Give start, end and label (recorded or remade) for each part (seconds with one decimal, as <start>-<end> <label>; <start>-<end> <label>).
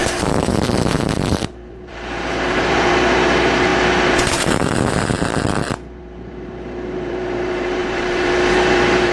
0.0-5.3 remade; 5.3-6.0 recorded; 6.0-9.1 remade